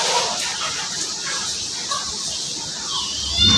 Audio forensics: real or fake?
real